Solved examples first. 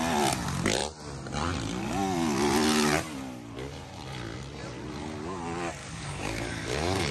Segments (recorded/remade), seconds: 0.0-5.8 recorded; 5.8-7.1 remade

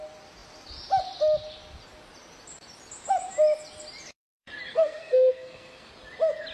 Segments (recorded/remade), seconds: 0.0-4.7 recorded; 4.7-5.9 remade; 5.9-6.5 recorded

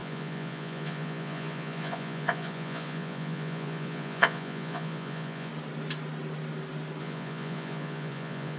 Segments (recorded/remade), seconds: 0.0-5.5 remade; 5.5-7.0 recorded; 7.0-8.6 remade

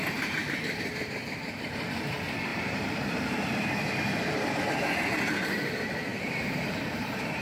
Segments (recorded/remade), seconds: 0.0-1.1 remade; 1.1-2.5 recorded; 2.5-4.6 remade; 4.6-6.1 recorded; 6.1-7.4 remade

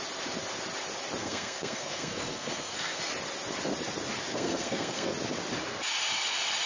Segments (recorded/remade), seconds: 0.0-1.2 recorded; 1.2-3.0 remade; 3.0-4.3 recorded; 4.3-5.1 remade; 5.1-6.7 recorded

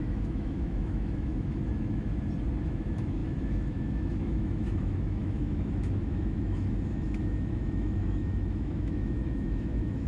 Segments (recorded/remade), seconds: 0.0-2.1 remade; 2.1-2.6 recorded; 2.6-10.1 remade

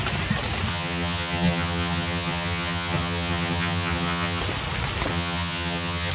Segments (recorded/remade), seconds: 0.0-0.7 recorded; 0.7-4.4 remade; 4.4-5.1 recorded; 5.1-6.1 remade

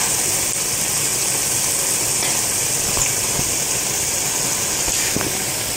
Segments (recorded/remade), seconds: 0.0-5.8 recorded